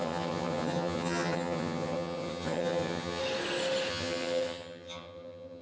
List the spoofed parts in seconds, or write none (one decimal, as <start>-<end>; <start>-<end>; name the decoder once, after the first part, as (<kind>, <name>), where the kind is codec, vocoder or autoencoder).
0.0-3.2 (vocoder, HiFi-GAN); 3.9-5.6